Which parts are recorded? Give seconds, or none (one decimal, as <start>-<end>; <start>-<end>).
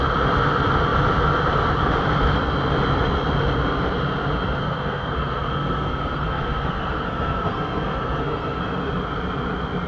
0.0-4.6; 8.6-9.9